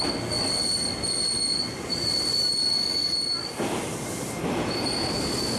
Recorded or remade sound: recorded